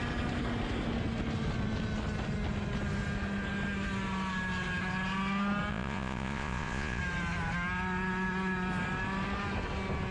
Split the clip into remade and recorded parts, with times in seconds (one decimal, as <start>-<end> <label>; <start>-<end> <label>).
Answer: 0.0-5.7 recorded; 5.7-7.0 remade; 7.0-10.1 recorded